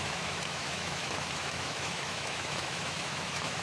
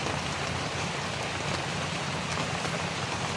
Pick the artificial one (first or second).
first